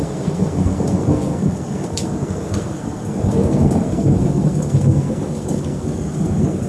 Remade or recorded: remade